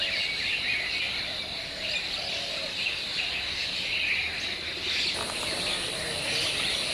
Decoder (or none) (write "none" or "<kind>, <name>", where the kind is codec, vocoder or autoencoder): none